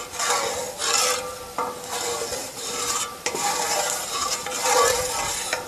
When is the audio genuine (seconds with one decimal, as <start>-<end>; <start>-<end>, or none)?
0.0-2.4; 4.4-5.7